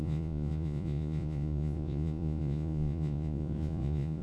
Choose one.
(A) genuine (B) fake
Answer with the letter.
B